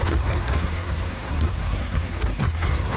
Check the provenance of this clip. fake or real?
fake